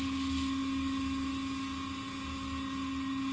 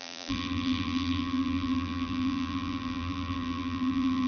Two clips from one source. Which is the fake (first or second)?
second